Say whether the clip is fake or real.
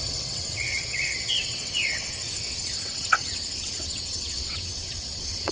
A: fake